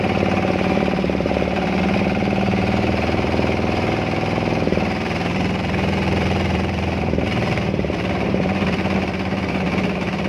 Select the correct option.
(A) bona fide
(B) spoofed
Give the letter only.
B